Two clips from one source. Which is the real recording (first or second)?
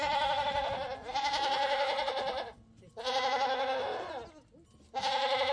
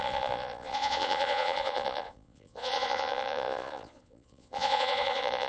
first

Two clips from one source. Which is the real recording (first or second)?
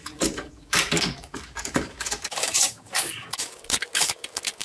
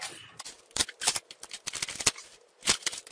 second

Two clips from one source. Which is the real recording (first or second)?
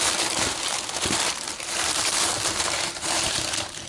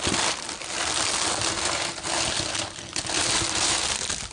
second